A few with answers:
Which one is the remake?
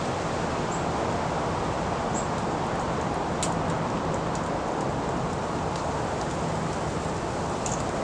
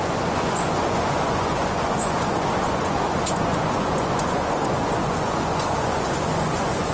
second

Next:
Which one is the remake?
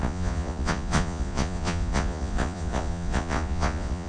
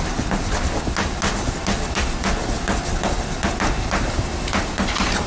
first